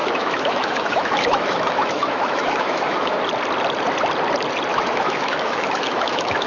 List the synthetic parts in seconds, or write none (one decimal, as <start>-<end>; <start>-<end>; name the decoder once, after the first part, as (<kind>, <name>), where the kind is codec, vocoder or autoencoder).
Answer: 0.0-3.2 (autoencoder, DAC-VAE); 4.7-6.5